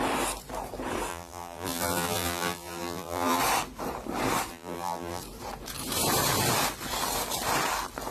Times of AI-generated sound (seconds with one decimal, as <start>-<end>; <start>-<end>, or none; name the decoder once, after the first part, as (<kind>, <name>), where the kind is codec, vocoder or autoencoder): 1.1-3.4 (vocoder, BigVGAN v2); 4.5-5.2